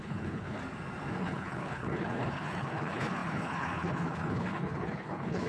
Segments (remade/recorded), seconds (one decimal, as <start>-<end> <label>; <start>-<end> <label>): 0.0-0.6 remade; 0.6-1.2 recorded; 1.2-5.5 remade